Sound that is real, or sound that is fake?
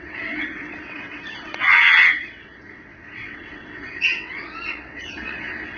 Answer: fake